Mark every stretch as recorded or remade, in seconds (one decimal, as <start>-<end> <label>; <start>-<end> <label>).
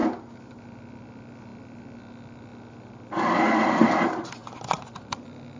0.0-5.6 recorded